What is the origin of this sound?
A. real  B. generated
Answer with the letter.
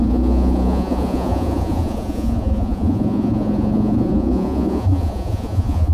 B